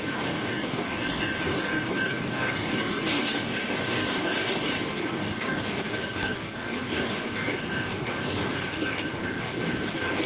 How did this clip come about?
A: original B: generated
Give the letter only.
B